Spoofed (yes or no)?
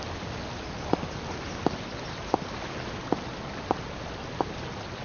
no